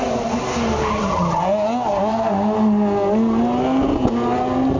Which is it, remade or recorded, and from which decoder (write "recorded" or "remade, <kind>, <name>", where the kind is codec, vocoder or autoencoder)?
recorded